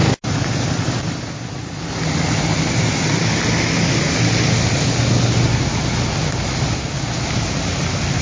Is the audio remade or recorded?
recorded